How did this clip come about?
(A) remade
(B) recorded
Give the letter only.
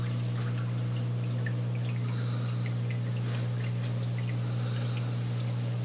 B